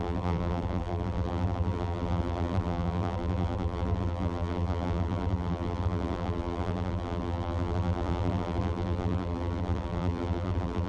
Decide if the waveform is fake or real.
fake